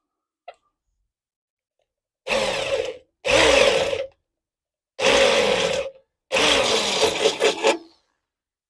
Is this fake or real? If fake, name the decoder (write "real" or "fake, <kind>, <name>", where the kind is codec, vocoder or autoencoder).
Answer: real